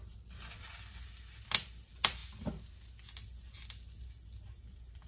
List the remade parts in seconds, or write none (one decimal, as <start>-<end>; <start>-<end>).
none